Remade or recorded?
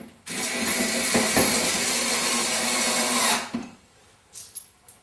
recorded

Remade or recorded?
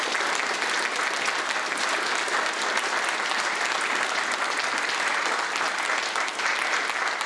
recorded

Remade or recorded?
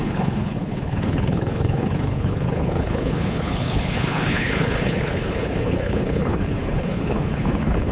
remade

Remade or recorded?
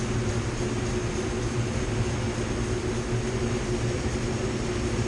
recorded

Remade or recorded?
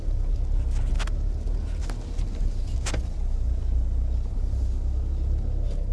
recorded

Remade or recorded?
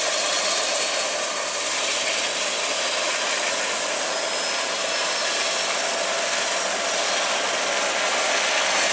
recorded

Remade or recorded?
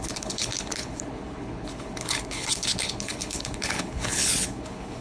remade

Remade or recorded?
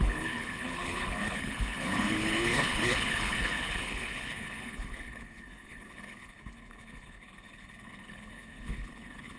remade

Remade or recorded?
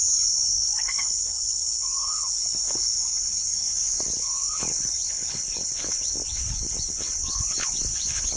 remade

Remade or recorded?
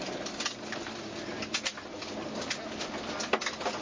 recorded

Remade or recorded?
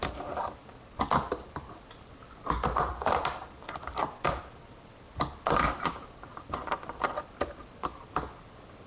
recorded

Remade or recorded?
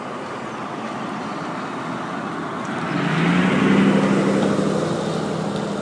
recorded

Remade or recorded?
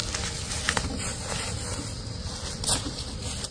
recorded